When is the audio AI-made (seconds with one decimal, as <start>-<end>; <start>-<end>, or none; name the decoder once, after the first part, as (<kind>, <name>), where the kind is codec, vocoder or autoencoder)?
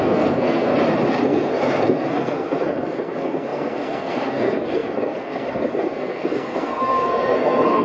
0.0-0.7 (codec, SNAC); 1.2-7.8